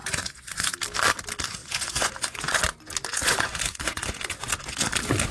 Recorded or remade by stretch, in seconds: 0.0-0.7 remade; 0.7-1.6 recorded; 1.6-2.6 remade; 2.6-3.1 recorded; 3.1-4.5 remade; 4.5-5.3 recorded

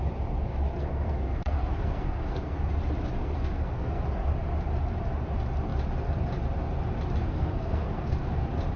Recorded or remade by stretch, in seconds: 0.0-0.5 recorded; 0.5-2.7 remade; 2.7-3.2 recorded; 3.2-4.0 remade; 4.0-7.2 recorded; 7.2-8.4 remade; 8.4-8.8 recorded

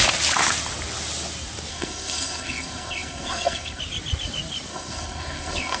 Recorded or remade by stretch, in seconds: 0.0-1.7 recorded; 1.7-3.8 remade; 3.8-4.7 recorded; 4.7-5.8 remade

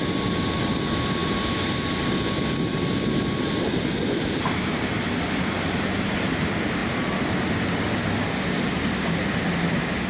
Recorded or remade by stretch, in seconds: 0.0-2.7 recorded; 2.7-3.3 remade; 3.3-6.8 recorded; 6.8-7.3 remade; 7.3-10.1 recorded